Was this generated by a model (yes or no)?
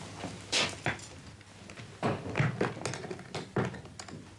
no